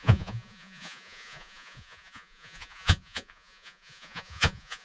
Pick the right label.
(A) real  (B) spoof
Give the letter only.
B